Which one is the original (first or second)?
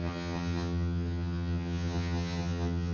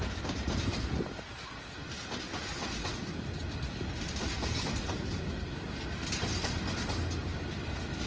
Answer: second